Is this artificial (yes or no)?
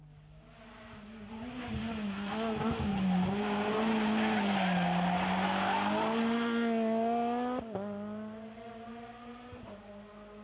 no